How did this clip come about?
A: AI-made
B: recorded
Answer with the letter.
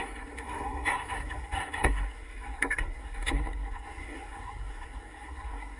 A